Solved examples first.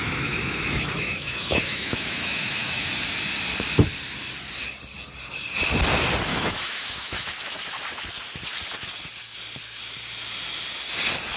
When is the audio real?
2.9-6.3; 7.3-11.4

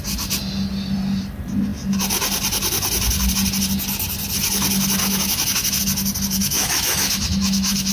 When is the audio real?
0.0-5.0; 5.8-6.4

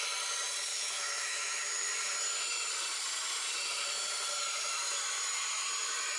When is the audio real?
0.0-0.7; 1.9-6.2

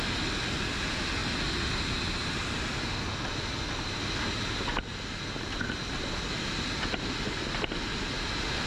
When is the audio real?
0.0-8.7

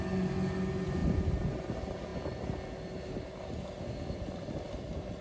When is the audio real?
0.0-5.2

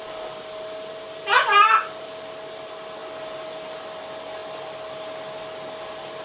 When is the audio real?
0.0-6.2